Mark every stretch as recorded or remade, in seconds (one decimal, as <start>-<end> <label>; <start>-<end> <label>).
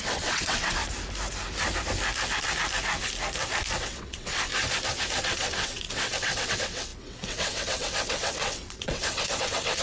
0.0-0.8 remade; 0.8-3.8 recorded; 3.8-4.5 remade; 4.5-5.2 recorded; 5.2-9.8 remade